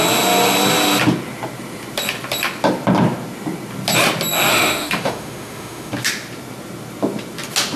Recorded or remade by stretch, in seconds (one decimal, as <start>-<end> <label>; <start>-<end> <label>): 0.0-4.5 recorded; 4.5-5.9 remade; 5.9-7.8 recorded